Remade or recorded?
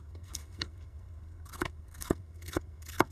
remade